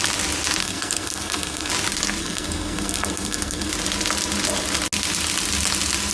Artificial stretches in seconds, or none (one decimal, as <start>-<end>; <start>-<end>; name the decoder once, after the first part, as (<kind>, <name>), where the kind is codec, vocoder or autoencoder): 0.6-1.7 (codec, SNAC); 2.2-3.7